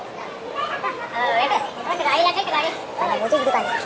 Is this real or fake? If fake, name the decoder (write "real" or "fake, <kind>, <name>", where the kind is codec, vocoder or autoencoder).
real